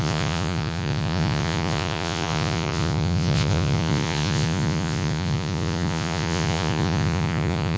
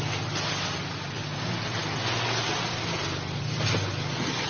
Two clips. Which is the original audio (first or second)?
second